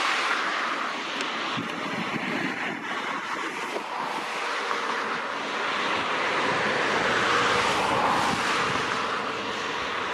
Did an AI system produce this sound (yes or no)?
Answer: no